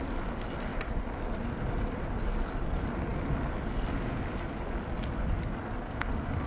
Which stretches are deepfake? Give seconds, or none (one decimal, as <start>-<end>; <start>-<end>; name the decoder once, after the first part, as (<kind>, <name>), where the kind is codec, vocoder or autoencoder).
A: 0.7-2.0 (vocoder, BigVGAN v2); 3.1-4.7

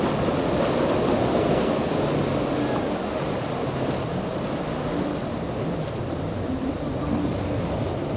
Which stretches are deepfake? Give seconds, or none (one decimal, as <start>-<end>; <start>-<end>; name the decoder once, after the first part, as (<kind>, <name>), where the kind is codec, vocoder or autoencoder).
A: 1.3-1.9 (codec, SNAC)

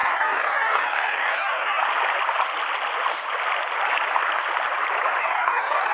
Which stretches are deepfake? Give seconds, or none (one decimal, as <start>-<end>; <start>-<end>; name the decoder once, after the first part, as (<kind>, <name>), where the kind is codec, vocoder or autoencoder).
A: 0.0-1.8 (codec, DAC); 5.2-5.9

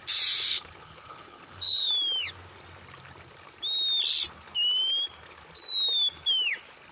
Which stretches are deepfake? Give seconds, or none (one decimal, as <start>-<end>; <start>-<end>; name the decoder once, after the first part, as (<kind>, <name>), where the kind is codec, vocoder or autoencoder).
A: 0.5-1.9 (codec, HILCodec)

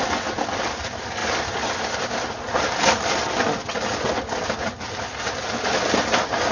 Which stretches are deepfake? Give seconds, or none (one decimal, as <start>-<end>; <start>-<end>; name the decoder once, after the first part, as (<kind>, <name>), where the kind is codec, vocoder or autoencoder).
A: none

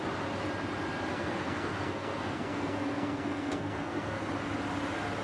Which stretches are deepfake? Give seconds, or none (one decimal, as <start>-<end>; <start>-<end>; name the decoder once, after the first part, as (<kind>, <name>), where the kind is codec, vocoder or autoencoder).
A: 1.1-4.2 (codec, SNAC)

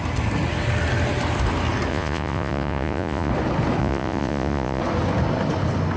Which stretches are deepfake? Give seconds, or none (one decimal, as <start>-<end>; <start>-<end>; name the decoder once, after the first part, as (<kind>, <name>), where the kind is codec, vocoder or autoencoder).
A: 1.9-3.3 (vocoder, Vocos); 3.8-4.8